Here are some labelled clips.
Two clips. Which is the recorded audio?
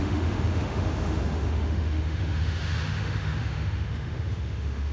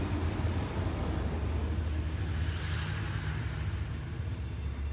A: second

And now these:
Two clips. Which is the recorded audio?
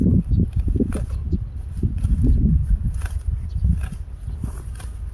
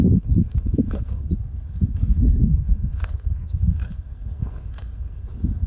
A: first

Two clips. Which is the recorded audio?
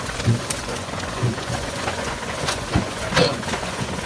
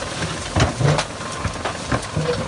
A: second